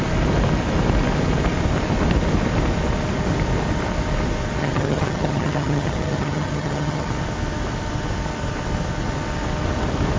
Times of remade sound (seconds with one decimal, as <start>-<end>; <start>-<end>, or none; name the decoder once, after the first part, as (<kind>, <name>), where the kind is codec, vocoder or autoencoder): 4.6-7.1 (vocoder, HiFi-GAN)